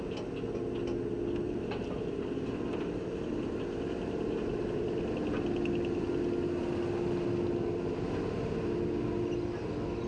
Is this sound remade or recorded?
recorded